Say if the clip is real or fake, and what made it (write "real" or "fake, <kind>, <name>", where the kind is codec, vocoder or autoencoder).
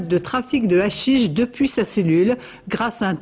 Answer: real